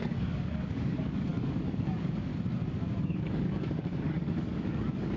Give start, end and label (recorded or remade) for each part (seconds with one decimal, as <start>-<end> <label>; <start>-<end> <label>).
0.0-2.3 remade; 2.3-3.0 recorded; 3.0-5.2 remade